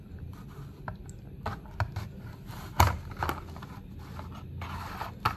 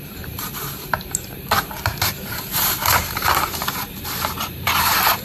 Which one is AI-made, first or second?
second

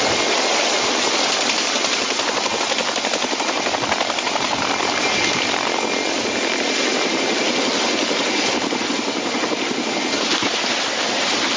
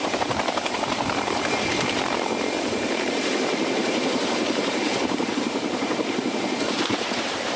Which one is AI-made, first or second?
second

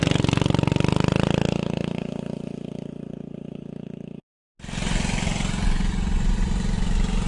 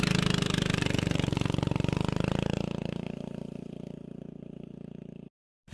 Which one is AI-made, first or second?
second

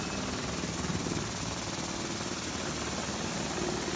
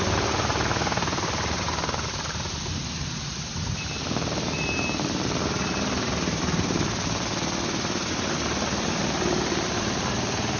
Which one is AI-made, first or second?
second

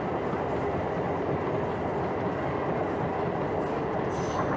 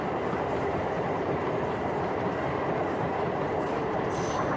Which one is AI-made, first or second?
second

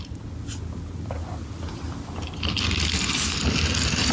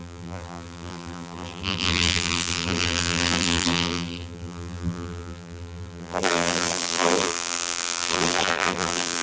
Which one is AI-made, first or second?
second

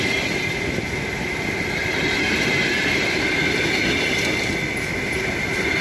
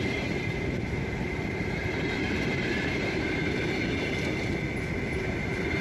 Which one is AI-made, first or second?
second